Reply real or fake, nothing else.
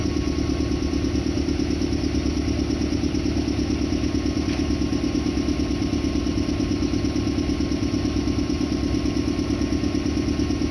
real